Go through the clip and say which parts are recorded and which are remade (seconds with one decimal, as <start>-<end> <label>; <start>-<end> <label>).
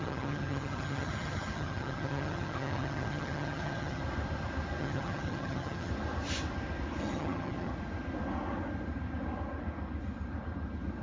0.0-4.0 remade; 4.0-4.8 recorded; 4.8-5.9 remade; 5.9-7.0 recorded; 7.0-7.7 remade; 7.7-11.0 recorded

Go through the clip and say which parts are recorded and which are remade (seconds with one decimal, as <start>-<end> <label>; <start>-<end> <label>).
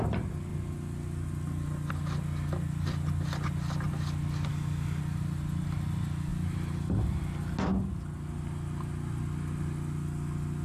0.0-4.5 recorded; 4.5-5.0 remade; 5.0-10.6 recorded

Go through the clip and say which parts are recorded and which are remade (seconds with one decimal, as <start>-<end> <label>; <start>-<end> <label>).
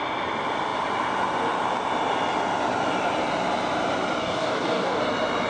0.0-4.2 recorded; 4.2-5.0 remade; 5.0-5.5 recorded